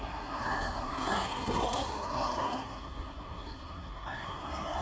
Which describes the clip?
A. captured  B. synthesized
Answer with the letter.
B